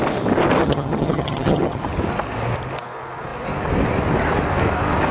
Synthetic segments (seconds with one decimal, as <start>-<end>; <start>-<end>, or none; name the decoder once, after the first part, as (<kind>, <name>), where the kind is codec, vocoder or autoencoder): 0.6-1.8 (vocoder, HiFi-GAN)

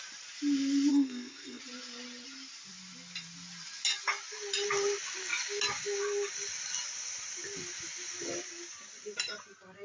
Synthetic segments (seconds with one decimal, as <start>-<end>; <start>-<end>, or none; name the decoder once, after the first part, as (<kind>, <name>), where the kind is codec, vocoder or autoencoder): 0.9-1.6 (codec, ZipCodec)

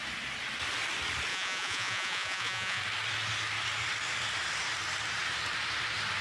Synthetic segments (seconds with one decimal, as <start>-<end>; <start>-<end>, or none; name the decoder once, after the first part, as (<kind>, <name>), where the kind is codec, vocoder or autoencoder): 1.3-2.8 (vocoder, Vocos)